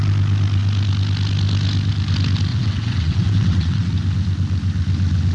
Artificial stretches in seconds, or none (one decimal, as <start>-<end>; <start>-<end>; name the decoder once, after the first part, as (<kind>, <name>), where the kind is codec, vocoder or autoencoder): 2.5-3.9 (vocoder, WaveNeXt)